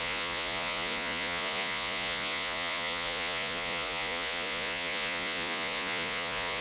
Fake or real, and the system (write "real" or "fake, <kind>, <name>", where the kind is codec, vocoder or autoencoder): fake, vocoder, Vocos